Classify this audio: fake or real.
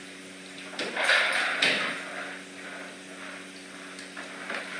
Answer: real